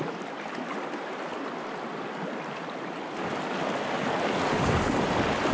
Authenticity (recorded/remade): recorded